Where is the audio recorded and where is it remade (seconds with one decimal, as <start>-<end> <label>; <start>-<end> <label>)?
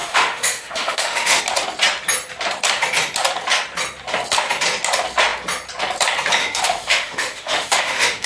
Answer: 0.0-1.4 remade; 1.4-6.4 recorded; 6.4-8.3 remade